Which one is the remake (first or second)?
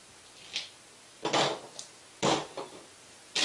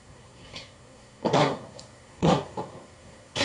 second